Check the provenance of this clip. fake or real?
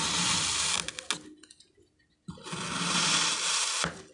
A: real